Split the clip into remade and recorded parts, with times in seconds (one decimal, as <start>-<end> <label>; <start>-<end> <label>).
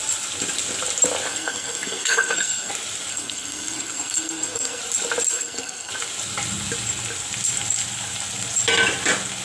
0.0-1.3 recorded; 1.3-2.7 remade; 2.7-3.1 recorded; 3.1-4.8 remade; 4.8-5.3 recorded; 5.3-5.9 remade; 5.9-9.4 recorded